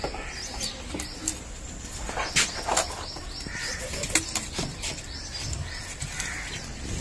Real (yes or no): no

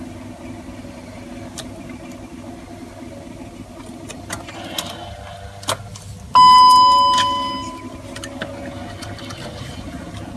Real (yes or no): yes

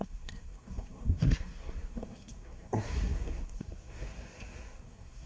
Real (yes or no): no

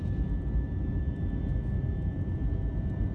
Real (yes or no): yes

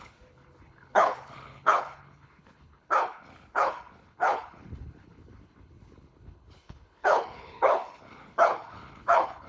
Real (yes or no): no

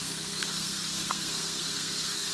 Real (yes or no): no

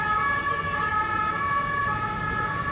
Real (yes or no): yes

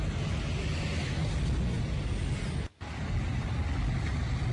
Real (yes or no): yes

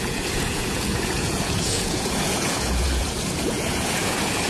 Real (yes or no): no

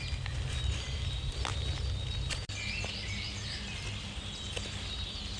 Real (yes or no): yes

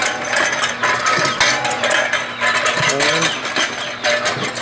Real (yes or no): yes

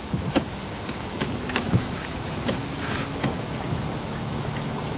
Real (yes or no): no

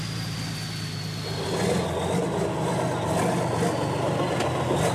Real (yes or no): yes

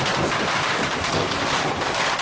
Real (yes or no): yes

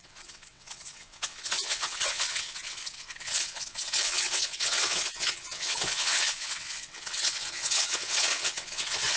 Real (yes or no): no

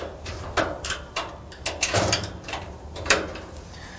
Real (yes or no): no